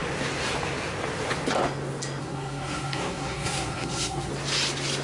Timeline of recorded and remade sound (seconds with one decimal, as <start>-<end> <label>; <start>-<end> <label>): 0.0-2.2 recorded; 2.2-4.3 remade; 4.3-5.0 recorded